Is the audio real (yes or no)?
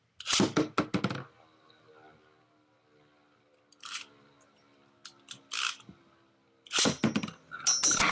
yes